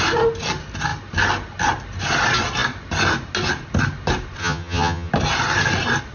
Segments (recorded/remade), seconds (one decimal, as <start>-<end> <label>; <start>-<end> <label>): 0.0-4.4 recorded; 4.4-5.1 remade; 5.1-6.1 recorded